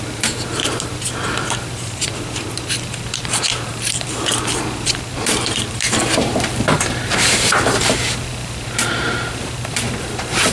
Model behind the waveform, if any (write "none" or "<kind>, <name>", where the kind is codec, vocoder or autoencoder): vocoder, BigVGAN v2